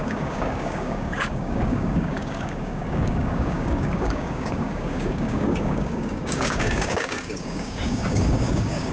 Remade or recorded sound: remade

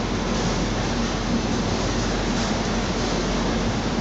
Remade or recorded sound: recorded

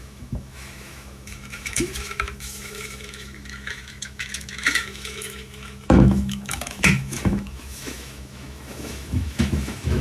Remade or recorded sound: remade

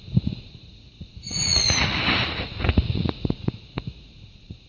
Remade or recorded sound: remade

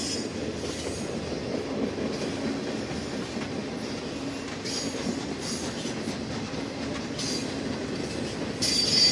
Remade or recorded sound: recorded